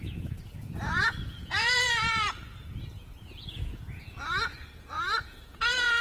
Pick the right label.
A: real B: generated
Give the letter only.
B